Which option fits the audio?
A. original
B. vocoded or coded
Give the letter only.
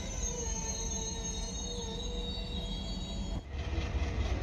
A